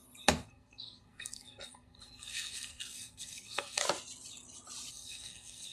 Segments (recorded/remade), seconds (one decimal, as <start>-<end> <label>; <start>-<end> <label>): 0.0-0.5 recorded; 0.5-3.8 remade; 3.8-4.9 recorded; 4.9-5.7 remade